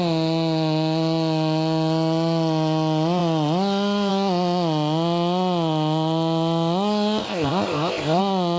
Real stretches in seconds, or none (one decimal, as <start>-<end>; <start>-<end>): 0.0-7.2; 8.2-8.6